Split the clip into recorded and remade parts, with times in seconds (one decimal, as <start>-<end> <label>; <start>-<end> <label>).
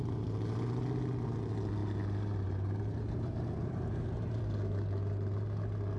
0.0-1.8 recorded; 1.8-4.4 remade; 4.4-6.0 recorded